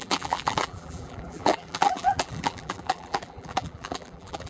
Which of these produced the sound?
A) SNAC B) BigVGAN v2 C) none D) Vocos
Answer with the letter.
B